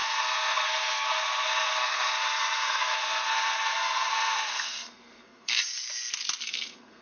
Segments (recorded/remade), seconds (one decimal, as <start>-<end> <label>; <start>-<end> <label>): 0.0-5.5 remade; 5.5-6.4 recorded; 6.4-7.0 remade